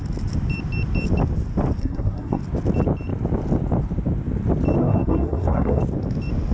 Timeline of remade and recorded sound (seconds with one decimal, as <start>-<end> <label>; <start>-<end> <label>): 0.0-1.8 recorded; 1.8-2.4 remade; 2.4-4.8 recorded; 4.8-5.8 remade; 5.8-6.5 recorded